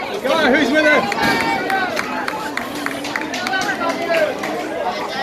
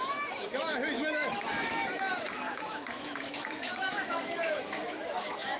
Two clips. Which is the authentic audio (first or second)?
first